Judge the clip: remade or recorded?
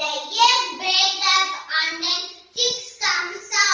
remade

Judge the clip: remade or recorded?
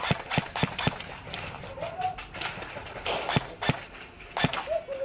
recorded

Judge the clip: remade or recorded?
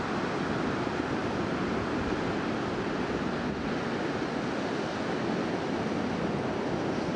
recorded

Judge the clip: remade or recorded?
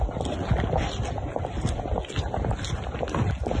recorded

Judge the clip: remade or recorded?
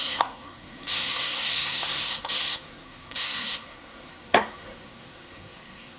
remade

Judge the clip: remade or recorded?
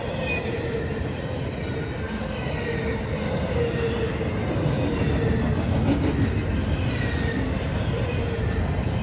recorded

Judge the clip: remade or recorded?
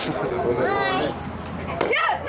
recorded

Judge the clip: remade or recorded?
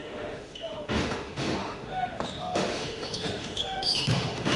remade